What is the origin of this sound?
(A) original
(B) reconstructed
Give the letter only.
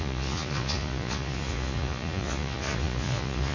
B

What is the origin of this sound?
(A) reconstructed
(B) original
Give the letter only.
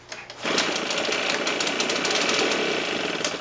B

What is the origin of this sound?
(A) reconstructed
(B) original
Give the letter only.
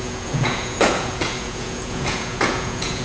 A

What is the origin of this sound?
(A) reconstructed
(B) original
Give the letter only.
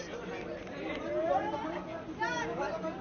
B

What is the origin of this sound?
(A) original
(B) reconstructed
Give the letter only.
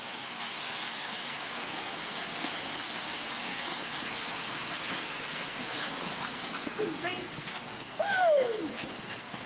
B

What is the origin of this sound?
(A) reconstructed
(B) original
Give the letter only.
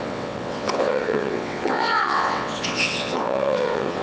A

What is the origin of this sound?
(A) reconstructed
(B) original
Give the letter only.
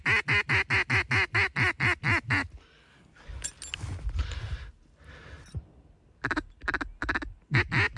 B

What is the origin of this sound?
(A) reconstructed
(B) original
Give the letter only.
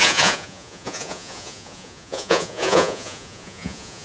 A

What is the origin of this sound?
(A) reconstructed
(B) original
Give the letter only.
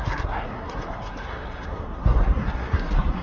A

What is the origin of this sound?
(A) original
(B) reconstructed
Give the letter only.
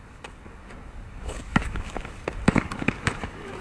B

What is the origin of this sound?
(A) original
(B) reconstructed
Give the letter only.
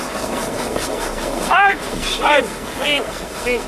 B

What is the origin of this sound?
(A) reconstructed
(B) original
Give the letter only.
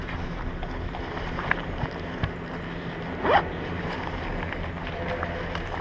B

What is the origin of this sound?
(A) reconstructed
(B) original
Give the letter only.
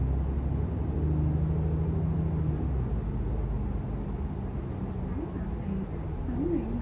B